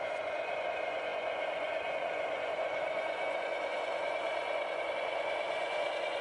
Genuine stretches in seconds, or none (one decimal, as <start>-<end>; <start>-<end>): none